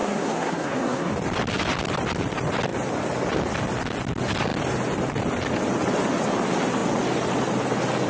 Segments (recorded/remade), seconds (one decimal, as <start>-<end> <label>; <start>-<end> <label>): 0.0-1.1 remade; 1.1-8.1 recorded